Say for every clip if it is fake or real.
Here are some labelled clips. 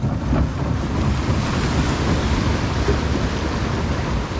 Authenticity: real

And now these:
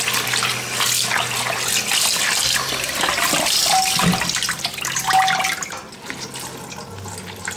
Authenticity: real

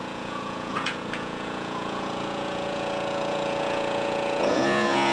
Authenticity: fake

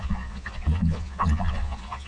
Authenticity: fake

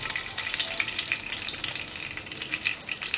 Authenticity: real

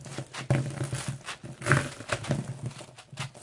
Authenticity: real